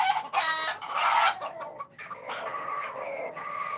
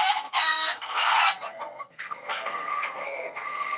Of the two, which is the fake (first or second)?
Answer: second